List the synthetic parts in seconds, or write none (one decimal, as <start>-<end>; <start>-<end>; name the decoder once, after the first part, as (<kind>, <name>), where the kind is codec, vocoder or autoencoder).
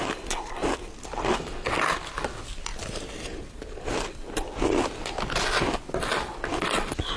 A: none